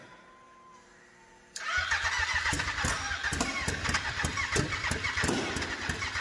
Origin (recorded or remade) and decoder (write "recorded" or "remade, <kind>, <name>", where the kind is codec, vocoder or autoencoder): recorded